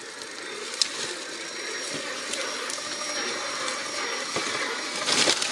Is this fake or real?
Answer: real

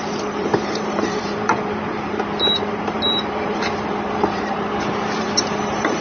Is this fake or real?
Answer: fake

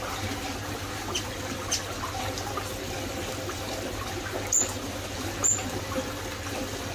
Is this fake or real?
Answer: real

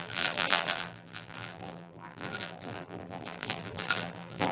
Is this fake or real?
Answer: fake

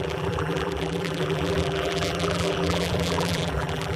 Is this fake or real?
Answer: fake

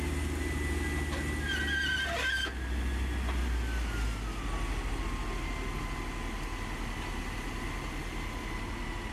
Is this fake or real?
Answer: real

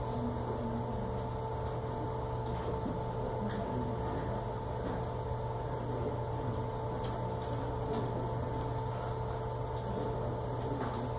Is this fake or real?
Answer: real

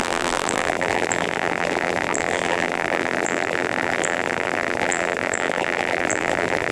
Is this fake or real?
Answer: fake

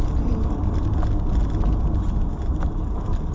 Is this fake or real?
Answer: real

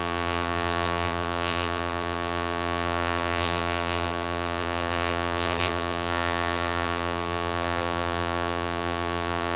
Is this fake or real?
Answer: fake